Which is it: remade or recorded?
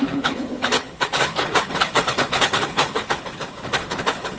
remade